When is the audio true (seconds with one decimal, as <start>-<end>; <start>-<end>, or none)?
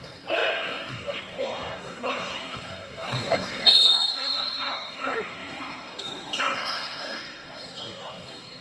none